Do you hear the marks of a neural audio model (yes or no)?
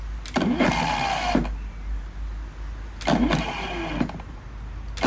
no